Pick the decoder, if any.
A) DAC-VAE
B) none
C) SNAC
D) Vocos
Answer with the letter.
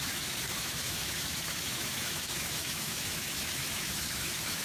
A